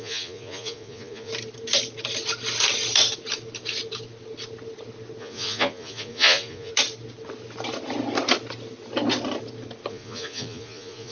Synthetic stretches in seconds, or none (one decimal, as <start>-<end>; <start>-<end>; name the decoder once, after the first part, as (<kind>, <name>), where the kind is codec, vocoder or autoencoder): 0.0-1.3 (vocoder, Vocos); 5.2-6.7; 9.9-11.1